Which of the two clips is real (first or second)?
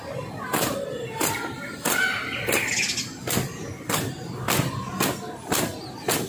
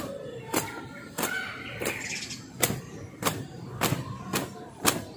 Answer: first